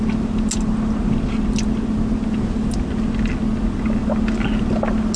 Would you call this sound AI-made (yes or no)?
no